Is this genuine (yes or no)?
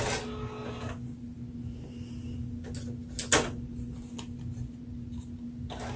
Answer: yes